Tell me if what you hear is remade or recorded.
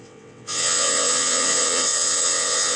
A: remade